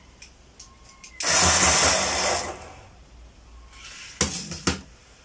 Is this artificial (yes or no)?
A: no